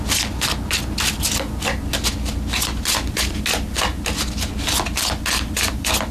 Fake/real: real